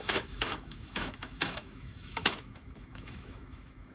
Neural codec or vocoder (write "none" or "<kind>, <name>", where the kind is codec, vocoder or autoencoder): autoencoder, DAC-VAE